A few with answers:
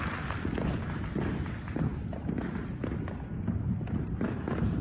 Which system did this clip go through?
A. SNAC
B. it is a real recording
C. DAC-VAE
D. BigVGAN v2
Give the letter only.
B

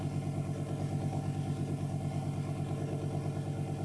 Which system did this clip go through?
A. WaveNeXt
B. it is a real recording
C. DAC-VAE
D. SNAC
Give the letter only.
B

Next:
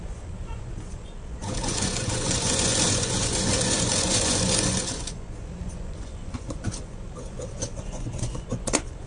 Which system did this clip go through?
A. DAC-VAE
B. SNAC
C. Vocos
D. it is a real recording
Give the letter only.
C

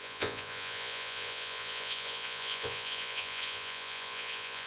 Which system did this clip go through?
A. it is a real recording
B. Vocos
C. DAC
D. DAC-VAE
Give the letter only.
B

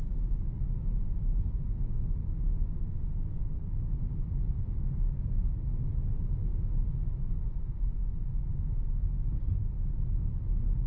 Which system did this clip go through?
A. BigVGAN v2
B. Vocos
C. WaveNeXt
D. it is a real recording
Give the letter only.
D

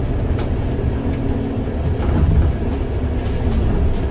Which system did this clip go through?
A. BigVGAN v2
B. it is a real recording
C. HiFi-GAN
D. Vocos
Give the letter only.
B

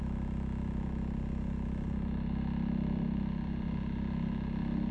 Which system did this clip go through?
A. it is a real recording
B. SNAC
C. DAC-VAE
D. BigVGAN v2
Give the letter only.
A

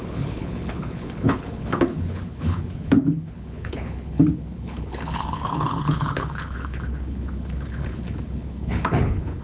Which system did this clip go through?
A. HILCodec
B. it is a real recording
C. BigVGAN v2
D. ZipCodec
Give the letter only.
A